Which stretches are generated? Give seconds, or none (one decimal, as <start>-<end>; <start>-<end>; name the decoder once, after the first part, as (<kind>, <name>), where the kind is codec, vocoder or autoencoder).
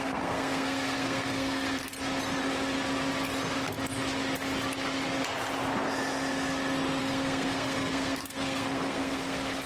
0.0-1.9 (codec, SNAC); 7.0-9.7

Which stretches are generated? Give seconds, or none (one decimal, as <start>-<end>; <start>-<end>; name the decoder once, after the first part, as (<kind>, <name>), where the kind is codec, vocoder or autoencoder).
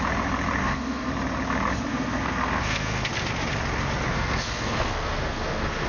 0.6-1.1 (codec, SNAC); 1.9-3.1; 4.1-5.9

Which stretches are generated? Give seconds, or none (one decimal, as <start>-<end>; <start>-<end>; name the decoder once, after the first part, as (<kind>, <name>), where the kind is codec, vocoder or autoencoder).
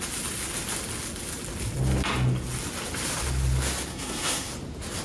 3.9-4.5 (codec, SNAC)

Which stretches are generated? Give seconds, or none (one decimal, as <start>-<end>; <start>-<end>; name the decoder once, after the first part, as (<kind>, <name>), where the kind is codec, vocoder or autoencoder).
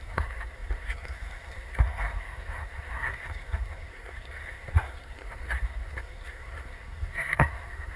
0.0-8.0 (codec, SNAC)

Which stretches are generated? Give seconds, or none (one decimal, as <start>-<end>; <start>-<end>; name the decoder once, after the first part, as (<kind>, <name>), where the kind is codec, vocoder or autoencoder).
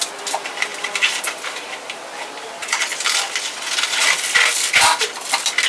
none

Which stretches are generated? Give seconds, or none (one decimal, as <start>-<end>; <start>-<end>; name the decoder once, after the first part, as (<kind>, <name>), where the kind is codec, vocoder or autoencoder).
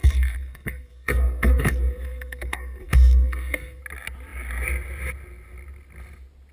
0.0-3.8 (codec, SNAC)